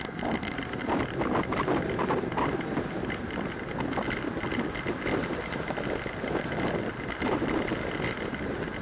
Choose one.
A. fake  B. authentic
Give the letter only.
B